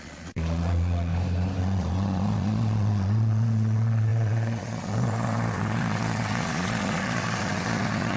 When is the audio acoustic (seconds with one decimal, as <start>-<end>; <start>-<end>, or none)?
1.1-1.6